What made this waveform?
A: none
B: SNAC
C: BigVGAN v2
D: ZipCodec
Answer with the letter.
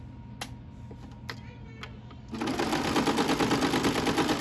A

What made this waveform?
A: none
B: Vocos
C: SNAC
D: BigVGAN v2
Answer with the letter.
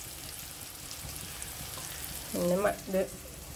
D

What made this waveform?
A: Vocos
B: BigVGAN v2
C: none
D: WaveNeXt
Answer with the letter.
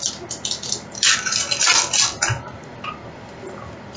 B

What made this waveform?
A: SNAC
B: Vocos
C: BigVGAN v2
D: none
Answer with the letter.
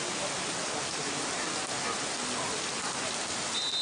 D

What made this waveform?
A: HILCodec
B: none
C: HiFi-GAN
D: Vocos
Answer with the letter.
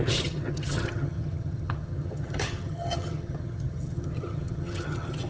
C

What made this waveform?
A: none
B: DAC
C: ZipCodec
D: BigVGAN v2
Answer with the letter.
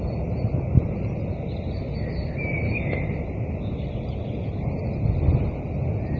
A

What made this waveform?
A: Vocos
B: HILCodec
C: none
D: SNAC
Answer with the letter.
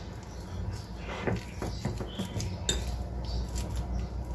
C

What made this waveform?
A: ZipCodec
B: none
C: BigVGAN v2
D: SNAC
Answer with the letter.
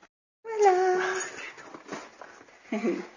B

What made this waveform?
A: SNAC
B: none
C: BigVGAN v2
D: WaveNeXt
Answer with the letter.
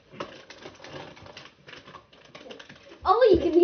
B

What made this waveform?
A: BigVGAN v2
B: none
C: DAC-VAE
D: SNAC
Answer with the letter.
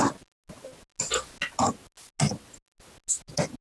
B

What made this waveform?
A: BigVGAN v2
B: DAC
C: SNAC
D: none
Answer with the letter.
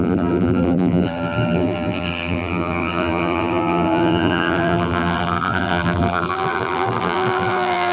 A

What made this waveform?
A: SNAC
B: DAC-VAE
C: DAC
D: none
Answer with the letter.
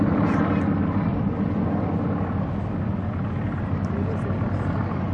D